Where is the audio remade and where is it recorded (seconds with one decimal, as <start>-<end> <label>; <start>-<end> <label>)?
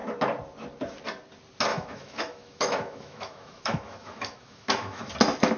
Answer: 0.0-1.7 recorded; 1.7-5.1 remade; 5.1-5.6 recorded